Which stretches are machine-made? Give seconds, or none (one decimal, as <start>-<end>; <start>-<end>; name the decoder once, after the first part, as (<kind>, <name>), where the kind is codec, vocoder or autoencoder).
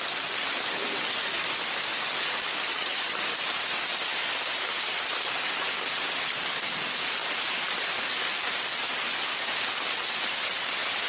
2.7-3.2 (vocoder, HiFi-GAN)